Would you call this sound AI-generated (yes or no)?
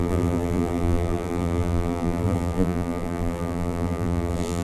yes